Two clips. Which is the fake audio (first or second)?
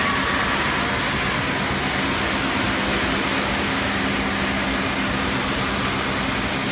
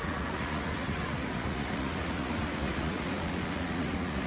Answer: second